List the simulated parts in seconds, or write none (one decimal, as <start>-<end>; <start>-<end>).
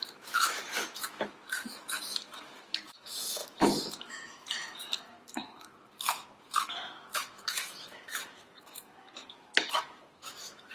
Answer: 0.0-10.7